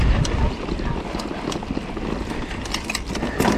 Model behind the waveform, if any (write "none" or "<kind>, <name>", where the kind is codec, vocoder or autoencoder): none